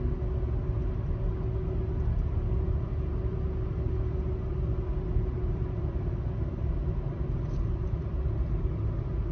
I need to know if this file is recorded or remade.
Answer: recorded